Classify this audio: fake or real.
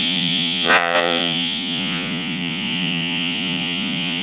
fake